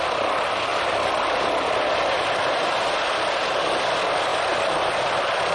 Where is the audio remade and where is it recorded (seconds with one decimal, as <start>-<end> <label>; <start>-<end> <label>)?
0.0-0.7 recorded; 0.7-1.4 remade; 1.4-4.3 recorded; 4.3-4.9 remade; 4.9-5.5 recorded